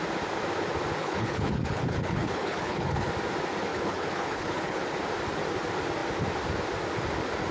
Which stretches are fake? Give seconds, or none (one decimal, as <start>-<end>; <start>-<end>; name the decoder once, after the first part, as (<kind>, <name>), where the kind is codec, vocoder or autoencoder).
1.0-3.1 (codec, HILCodec); 3.7-4.8